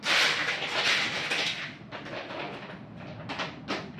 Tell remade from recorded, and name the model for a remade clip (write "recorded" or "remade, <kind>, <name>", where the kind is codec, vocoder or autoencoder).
recorded